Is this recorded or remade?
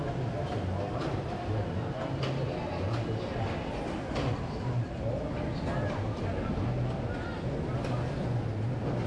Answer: recorded